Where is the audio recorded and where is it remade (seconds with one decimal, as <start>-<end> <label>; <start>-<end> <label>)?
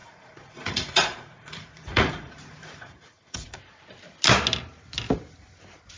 0.0-3.6 remade; 3.6-6.0 recorded